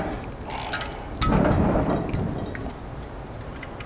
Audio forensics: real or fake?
real